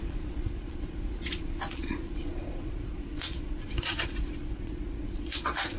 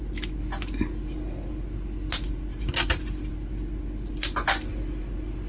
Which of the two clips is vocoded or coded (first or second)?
first